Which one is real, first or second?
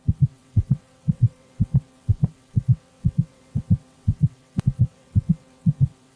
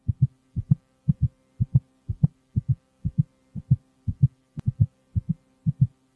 second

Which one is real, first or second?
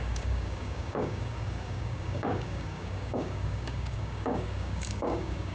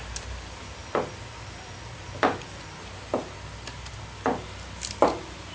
second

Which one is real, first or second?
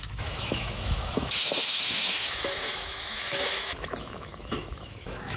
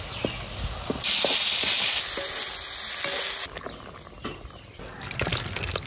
second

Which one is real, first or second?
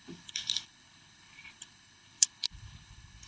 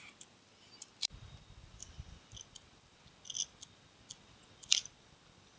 second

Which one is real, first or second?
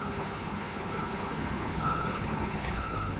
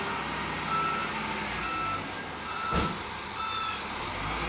second